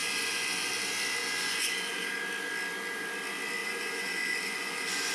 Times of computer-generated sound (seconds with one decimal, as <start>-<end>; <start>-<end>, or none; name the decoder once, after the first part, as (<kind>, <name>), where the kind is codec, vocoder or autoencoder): 0.0-0.7 (vocoder, Vocos); 1.2-2.2; 3.6-5.1